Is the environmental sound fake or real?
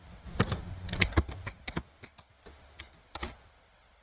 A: real